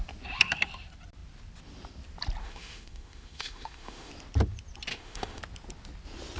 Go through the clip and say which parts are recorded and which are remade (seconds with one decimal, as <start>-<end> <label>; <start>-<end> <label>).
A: 0.0-2.4 recorded; 2.4-4.1 remade; 4.1-4.9 recorded; 4.9-5.4 remade; 5.4-6.4 recorded